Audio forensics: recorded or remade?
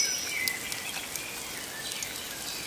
recorded